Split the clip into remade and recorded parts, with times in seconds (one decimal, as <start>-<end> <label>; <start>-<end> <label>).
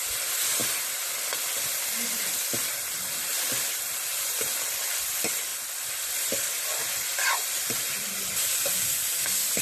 0.0-4.1 recorded; 4.1-4.7 remade; 4.7-9.6 recorded